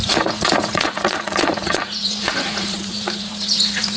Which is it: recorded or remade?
remade